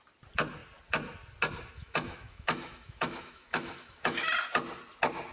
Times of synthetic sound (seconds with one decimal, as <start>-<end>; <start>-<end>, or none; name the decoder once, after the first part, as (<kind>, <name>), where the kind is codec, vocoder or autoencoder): 1.8-4.3 (autoencoder, DAC-VAE)